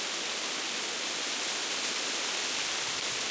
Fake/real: real